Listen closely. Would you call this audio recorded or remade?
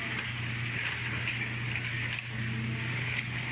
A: recorded